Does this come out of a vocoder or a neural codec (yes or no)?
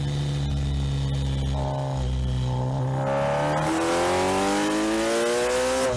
no